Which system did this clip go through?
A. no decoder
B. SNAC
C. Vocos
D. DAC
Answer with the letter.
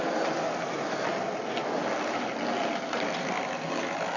A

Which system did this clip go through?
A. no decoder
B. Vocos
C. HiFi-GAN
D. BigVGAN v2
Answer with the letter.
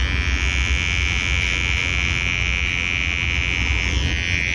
A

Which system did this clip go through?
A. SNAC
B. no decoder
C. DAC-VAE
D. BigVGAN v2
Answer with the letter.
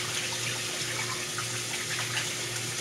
B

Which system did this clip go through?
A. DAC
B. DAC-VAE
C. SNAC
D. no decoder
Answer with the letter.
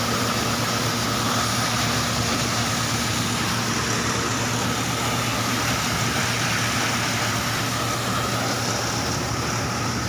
D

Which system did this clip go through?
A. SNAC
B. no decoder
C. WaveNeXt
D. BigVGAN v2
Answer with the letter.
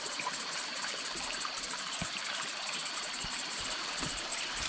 D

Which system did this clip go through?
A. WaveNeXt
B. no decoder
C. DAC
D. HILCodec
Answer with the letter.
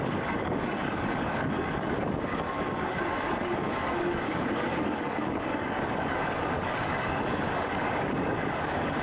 C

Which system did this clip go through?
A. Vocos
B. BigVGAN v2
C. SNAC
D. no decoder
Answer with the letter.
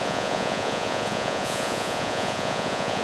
A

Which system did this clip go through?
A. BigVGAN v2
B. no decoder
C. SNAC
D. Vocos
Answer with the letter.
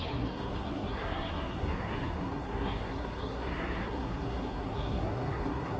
C